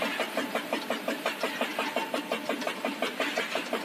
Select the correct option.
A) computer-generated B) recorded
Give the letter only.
B